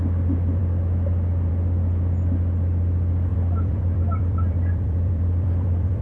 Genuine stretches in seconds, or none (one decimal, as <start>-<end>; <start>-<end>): 0.0-3.3